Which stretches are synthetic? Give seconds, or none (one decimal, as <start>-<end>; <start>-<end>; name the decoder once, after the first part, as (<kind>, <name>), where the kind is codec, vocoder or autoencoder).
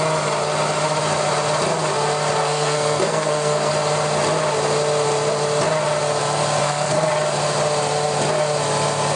2.4-3.7 (codec, SNAC); 6.6-7.1